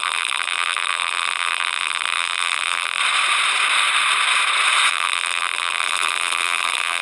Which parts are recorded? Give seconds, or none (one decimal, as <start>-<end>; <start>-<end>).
3.0-4.9